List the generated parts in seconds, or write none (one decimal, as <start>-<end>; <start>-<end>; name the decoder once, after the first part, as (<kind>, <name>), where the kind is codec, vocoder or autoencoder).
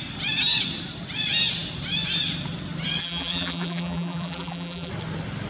3.0-4.9 (vocoder, BigVGAN v2)